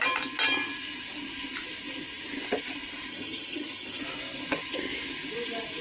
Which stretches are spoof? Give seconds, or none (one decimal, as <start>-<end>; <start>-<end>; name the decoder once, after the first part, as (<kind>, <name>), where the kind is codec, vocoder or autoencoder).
3.1-4.0 (vocoder, HiFi-GAN)